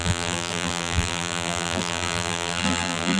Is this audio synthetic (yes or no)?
yes